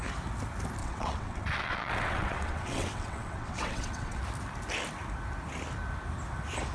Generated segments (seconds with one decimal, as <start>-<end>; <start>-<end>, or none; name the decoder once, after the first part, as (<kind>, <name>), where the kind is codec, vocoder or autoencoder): 0.8-4.2 (vocoder, WaveNeXt)